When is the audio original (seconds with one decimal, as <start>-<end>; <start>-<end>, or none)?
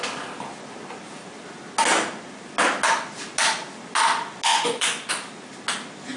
0.0-4.5; 5.1-6.2